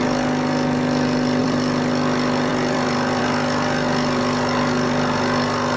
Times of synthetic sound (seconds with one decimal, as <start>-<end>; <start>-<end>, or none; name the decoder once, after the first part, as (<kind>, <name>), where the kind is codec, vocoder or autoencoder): 1.4-1.9 (vocoder, BigVGAN v2); 2.5-3.2

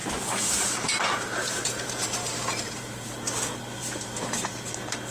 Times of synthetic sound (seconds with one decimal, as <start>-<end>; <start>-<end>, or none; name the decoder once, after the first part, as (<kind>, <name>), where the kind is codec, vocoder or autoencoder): 0.0-3.1 (vocoder, BigVGAN v2); 3.8-4.5

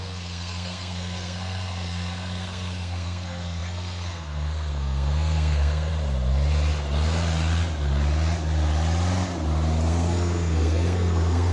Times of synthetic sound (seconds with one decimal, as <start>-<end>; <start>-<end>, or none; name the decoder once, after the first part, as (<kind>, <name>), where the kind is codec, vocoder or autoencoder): 0.0-5.9 (codec, SNAC); 9.9-11.5

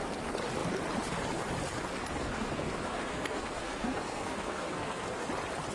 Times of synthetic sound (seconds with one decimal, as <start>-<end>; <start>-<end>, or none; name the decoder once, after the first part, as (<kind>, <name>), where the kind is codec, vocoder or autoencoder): 2.0-5.3 (codec, SNAC)

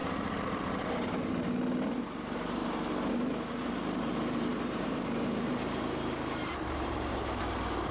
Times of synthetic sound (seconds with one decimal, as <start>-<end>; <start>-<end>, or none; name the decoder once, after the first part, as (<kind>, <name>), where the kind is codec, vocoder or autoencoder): 0.0-1.3 (vocoder, BigVGAN v2); 4.5-7.4

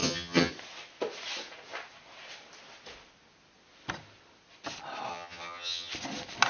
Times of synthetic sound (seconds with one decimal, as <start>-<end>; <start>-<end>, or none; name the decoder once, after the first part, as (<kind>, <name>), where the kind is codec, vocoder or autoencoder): 0.0-0.5 (vocoder, HiFi-GAN); 5.1-5.9

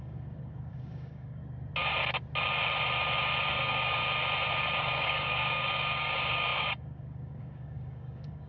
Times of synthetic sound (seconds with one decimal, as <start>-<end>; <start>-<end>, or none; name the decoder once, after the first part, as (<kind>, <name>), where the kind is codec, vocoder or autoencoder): 0.0-1.4 (codec, DAC); 3.5-4.0; 4.8-8.5